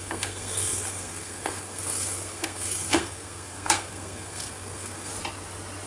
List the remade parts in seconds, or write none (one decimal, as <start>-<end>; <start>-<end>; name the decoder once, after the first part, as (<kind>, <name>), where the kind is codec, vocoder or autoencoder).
0.0-5.1 (codec, SNAC)